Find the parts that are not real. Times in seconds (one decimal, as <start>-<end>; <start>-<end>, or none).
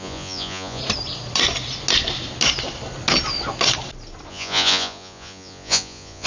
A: 0.0-0.8; 4.3-6.3